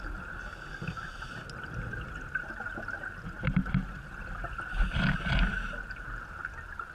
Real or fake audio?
real